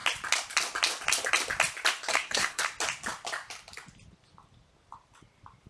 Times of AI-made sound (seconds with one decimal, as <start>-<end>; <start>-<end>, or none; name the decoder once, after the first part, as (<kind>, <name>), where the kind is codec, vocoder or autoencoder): 2.1-2.6 (codec, SNAC)